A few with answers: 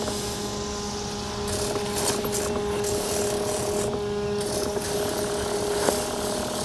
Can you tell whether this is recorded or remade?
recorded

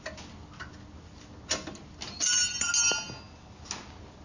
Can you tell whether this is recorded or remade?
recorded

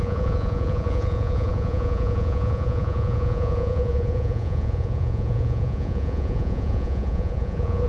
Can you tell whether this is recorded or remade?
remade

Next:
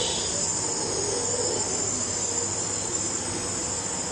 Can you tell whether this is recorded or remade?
recorded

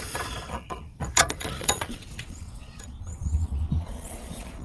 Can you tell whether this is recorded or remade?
remade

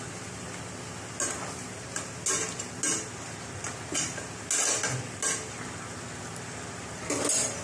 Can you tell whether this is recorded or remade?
recorded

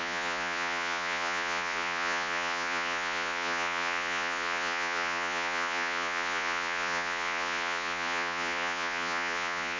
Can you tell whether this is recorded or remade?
remade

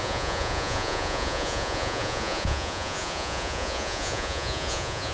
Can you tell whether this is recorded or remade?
remade